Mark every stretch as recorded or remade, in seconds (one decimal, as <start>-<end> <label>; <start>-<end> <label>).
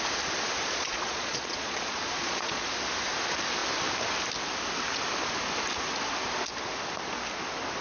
0.0-0.6 recorded; 0.6-2.7 remade; 2.7-7.8 recorded